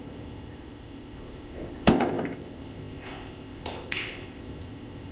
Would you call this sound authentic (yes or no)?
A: no